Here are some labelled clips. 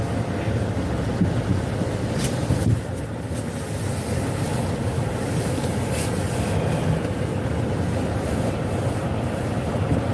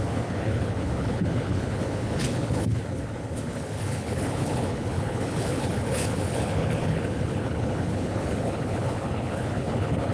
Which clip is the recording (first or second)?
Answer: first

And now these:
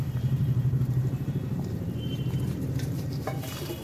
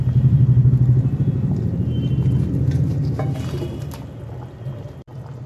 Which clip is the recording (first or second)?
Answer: second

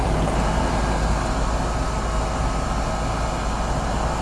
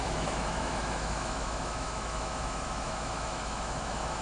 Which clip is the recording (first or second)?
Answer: first